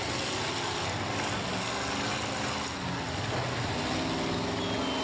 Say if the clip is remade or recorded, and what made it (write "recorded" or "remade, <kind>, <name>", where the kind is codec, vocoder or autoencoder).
recorded